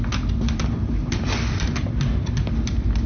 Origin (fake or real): real